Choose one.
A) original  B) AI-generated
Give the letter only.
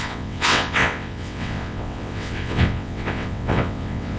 B